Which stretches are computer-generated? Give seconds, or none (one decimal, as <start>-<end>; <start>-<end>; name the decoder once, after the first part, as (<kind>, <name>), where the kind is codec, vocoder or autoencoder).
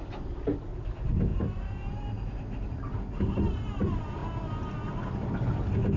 none